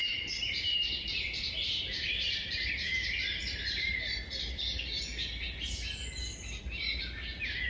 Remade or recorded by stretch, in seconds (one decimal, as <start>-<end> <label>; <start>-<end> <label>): 0.0-4.6 remade; 4.6-7.7 recorded